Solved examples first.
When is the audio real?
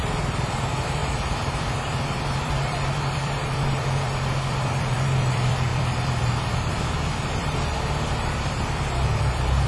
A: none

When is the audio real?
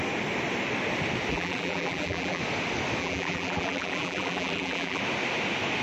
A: 0.0-1.3; 2.4-3.0; 5.0-5.8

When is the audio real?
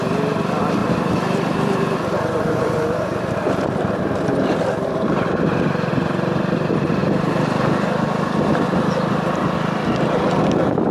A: 0.0-0.8; 5.9-10.9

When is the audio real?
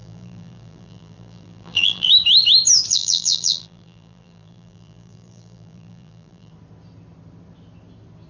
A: 2.1-2.9; 6.5-8.3